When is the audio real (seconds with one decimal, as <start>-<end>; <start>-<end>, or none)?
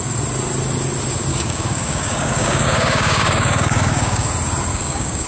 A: 0.0-1.3; 4.3-4.7